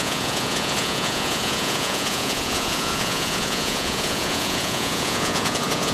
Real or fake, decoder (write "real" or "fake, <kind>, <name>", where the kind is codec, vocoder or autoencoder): fake, vocoder, Vocos